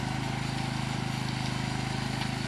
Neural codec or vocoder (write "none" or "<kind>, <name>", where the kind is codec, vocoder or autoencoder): none